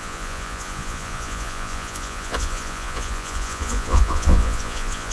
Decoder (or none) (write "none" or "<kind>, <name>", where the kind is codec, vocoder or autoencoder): vocoder, Vocos